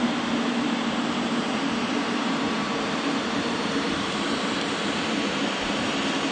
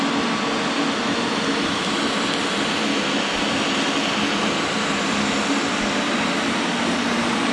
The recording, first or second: second